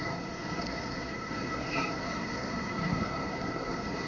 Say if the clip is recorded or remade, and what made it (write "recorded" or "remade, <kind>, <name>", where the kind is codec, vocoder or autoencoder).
remade, codec, SNAC